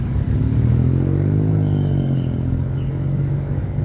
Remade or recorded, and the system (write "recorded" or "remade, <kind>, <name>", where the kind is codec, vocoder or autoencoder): remade, codec, DAC